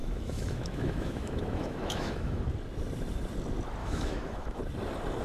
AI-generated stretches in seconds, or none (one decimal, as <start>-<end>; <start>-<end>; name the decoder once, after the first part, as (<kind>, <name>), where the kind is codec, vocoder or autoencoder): 0.0-2.4 (autoencoder, DAC-VAE); 3.8-4.6